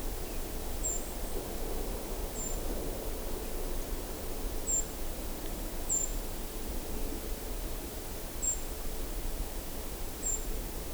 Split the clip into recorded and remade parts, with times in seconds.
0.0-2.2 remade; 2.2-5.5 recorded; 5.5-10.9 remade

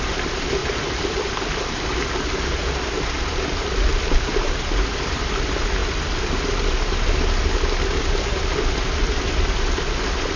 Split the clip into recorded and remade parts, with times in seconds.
0.0-0.6 recorded; 0.6-2.6 remade; 2.6-3.9 recorded; 3.9-5.3 remade; 5.3-10.4 recorded